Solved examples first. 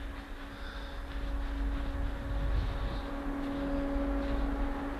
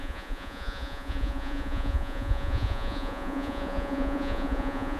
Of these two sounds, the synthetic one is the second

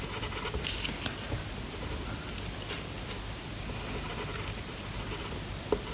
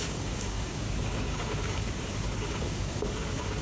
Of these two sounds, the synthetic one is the second